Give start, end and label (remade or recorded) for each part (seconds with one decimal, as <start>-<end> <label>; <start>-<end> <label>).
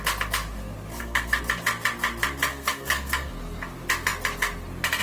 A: 0.0-0.9 recorded; 0.9-1.4 remade; 1.4-2.5 recorded; 2.5-3.3 remade; 3.3-5.0 recorded